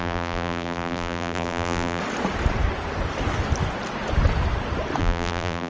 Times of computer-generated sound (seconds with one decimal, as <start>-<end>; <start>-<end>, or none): 0.0-2.0; 5.0-5.7